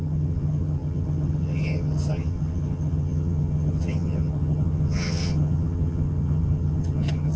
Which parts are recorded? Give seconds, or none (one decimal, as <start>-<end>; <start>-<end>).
none